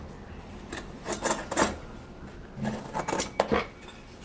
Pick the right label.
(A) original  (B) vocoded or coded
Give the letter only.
A